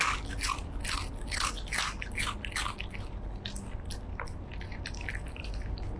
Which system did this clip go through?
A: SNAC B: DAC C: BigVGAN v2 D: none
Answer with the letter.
D